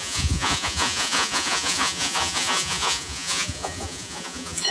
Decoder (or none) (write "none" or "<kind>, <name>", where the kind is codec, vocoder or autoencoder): vocoder, Vocos